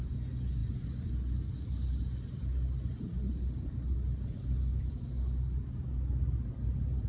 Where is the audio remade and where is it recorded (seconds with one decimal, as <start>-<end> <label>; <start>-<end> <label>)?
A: 0.0-7.1 recorded